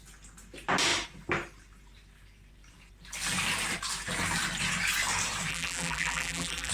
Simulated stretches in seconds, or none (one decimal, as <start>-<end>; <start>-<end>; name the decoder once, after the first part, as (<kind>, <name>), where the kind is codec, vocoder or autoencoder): 5.5-6.7 (vocoder, BigVGAN v2)